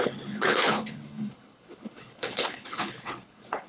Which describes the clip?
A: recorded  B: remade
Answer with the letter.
B